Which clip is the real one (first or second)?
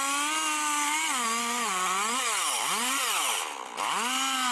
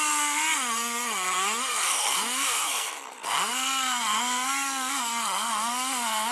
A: first